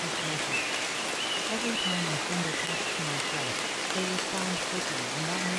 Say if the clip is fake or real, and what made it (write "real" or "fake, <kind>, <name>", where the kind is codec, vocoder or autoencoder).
real